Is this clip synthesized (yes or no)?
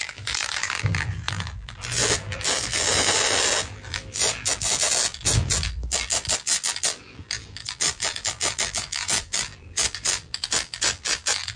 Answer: yes